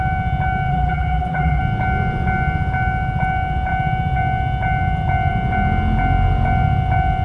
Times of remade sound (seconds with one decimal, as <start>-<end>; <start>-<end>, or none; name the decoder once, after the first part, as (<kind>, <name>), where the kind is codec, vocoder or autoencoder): 0.7-1.6 (vocoder, BigVGAN v2)